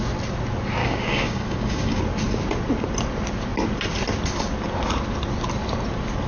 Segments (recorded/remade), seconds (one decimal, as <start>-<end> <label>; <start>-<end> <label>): 0.0-0.8 recorded; 0.8-2.0 remade; 2.0-6.3 recorded